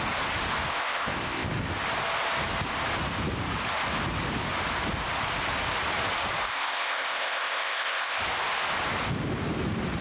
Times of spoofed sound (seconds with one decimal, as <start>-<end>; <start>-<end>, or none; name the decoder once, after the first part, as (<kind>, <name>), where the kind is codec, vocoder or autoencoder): 0.7-1.5 (codec, ZipCodec); 6.5-8.2